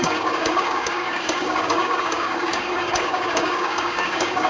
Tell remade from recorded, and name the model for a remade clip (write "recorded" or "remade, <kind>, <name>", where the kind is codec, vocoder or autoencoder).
remade, codec, DAC